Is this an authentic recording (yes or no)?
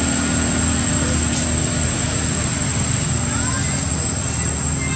yes